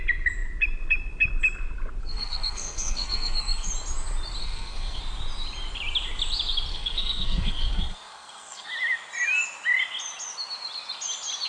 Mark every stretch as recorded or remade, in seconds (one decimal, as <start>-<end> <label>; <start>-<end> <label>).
0.0-2.0 recorded; 2.0-3.7 remade; 3.7-4.4 recorded; 4.4-5.0 remade; 5.0-6.7 recorded; 6.7-8.7 remade; 8.7-11.5 recorded